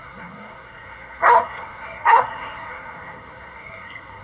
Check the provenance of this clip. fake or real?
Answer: fake